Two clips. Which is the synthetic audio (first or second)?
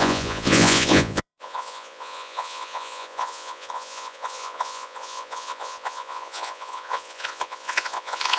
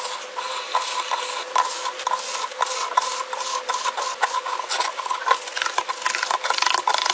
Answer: first